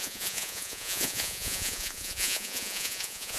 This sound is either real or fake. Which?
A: fake